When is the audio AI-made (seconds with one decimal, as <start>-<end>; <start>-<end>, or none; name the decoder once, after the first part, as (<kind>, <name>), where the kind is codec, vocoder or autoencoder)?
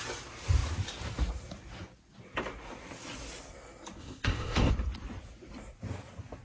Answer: 4.0-4.7 (codec, ZipCodec)